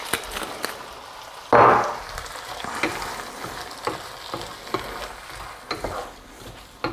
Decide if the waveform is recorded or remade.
recorded